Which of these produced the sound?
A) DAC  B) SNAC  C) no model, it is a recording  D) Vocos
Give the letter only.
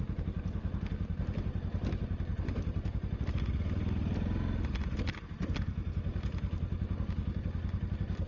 C